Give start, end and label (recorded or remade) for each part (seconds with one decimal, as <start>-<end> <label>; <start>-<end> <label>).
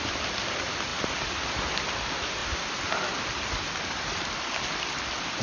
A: 0.0-5.4 recorded